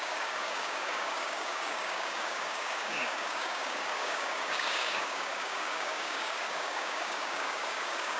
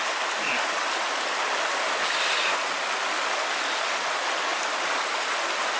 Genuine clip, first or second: second